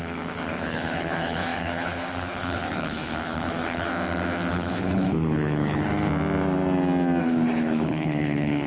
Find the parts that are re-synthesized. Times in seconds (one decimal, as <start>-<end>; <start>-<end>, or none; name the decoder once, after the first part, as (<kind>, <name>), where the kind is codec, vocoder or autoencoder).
0.0-3.9 (codec, HILCodec); 4.5-5.9; 7.2-8.7